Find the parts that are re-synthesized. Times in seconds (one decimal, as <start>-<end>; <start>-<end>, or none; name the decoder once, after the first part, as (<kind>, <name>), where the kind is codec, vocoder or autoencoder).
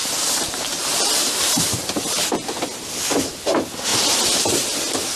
0.0-1.8 (vocoder, BigVGAN v2)